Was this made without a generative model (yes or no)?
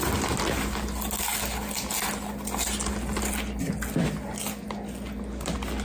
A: yes